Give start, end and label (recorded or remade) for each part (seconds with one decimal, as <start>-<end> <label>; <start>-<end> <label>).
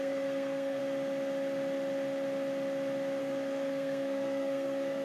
0.0-0.8 remade; 0.8-3.2 recorded; 3.2-5.0 remade